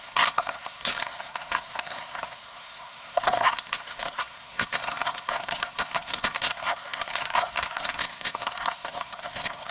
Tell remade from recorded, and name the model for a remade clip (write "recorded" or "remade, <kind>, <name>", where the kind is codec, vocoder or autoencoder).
remade, codec, SNAC